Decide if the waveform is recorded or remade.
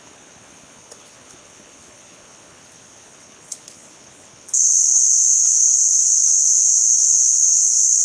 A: remade